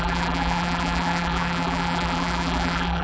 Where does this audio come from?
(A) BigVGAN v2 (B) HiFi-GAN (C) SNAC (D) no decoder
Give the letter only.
A